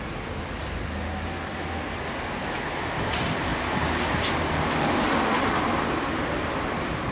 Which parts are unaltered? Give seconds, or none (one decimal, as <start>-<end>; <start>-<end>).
0.0-2.4; 3.1-7.1